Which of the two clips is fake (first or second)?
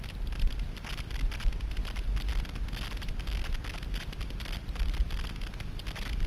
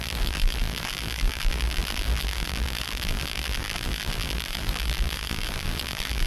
second